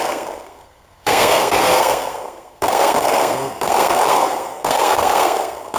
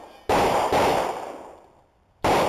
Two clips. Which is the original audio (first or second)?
second